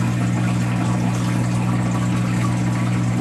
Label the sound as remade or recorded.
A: recorded